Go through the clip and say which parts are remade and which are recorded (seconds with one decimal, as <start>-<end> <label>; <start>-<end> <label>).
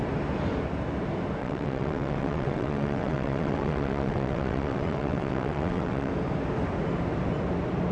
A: 0.0-1.4 recorded; 1.4-6.1 remade; 6.1-7.9 recorded